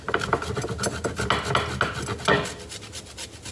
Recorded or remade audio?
recorded